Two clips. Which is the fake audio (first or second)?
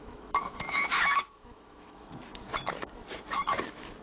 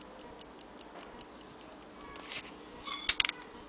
first